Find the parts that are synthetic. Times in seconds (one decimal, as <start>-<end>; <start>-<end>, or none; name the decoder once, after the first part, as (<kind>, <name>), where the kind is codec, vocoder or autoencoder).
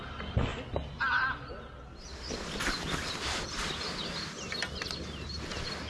none